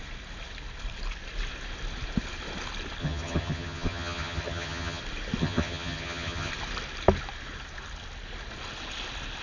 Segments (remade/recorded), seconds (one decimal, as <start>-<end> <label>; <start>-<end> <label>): 0.0-3.0 recorded; 3.0-5.0 remade; 5.0-5.4 recorded; 5.4-6.5 remade; 6.5-9.4 recorded